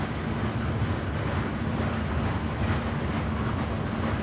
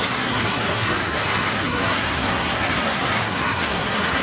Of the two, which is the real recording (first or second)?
first